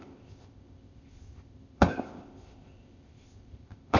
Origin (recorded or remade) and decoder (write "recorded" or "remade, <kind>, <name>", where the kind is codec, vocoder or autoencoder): remade, codec, ZipCodec